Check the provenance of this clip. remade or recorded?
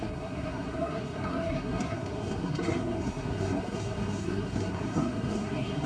remade